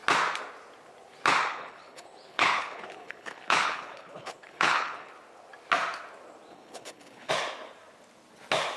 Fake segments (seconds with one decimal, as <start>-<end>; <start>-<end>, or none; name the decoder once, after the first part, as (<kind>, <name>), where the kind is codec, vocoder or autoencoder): 1.5-5.1 (codec, HILCodec); 6.5-7.3